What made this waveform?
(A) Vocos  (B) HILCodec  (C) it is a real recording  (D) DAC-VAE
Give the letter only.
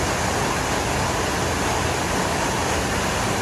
C